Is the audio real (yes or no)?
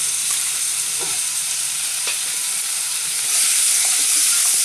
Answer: no